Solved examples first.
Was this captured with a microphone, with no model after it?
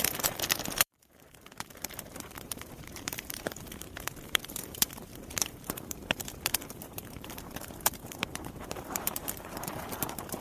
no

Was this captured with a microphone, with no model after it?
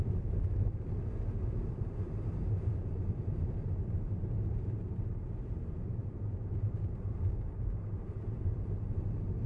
no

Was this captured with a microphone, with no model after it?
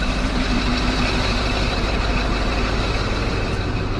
no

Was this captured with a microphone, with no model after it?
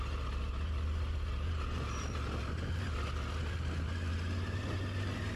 yes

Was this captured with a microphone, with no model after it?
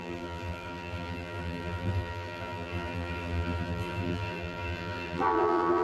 no